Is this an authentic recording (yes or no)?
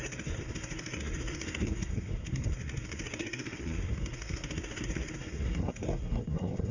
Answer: no